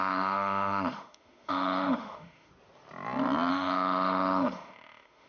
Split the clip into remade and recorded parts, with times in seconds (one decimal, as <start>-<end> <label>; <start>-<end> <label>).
0.0-2.5 remade; 2.5-3.5 recorded; 3.5-5.3 remade